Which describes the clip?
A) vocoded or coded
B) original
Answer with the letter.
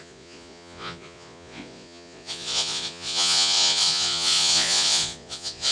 A